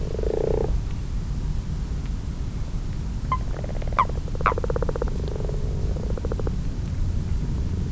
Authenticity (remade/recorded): recorded